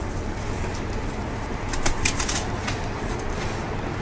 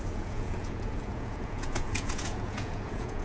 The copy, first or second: second